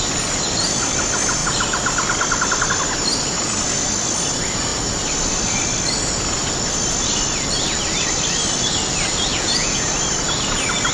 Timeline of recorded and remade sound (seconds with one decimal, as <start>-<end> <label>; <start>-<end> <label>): 0.0-9.3 recorded; 9.3-9.9 remade; 9.9-10.9 recorded